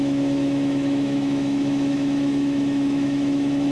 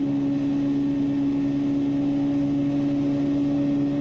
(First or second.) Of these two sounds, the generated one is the first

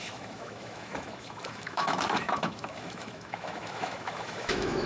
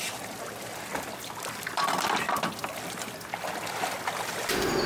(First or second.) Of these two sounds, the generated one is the first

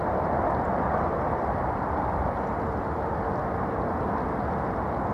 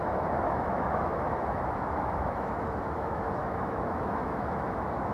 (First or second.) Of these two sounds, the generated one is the second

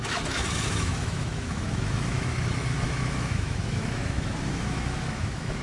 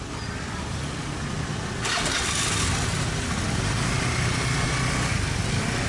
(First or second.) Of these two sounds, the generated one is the first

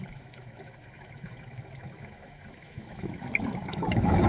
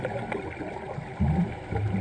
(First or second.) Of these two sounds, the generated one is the first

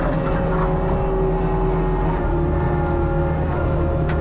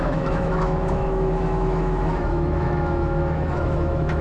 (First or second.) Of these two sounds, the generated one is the second